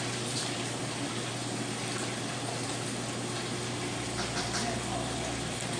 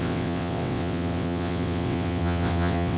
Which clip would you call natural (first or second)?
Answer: first